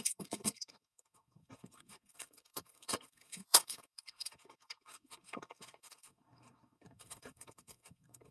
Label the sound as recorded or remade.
remade